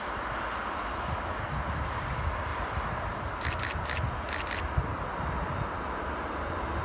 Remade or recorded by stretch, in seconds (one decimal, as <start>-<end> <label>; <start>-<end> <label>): 0.0-2.5 recorded; 2.5-3.1 remade; 3.1-4.9 recorded; 4.9-6.8 remade